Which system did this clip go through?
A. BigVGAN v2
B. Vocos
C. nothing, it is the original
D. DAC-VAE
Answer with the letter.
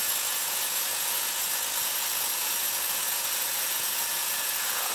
B